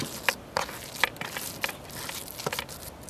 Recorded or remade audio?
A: recorded